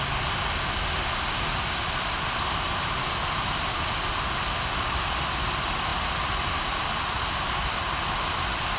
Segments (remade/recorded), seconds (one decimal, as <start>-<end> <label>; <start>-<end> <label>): 0.0-8.8 recorded